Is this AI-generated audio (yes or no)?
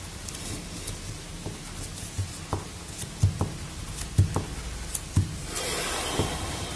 no